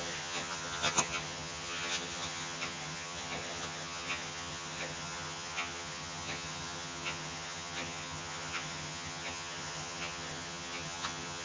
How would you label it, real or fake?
fake